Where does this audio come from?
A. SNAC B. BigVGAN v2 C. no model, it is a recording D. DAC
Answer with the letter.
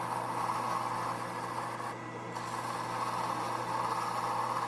C